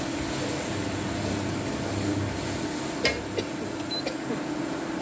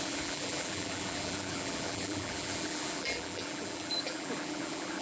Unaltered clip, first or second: first